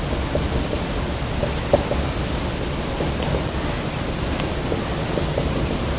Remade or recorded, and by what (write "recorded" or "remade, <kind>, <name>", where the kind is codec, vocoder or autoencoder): recorded